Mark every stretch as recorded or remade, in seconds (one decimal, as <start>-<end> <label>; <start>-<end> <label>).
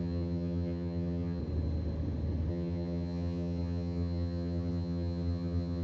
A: 0.0-1.4 remade; 1.4-2.5 recorded; 2.5-5.8 remade